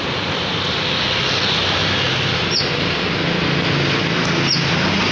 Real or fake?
real